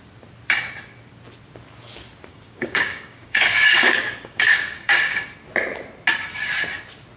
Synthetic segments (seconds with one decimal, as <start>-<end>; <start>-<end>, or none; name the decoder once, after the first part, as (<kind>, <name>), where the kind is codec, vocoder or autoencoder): 2.3-5.3 (codec, DAC)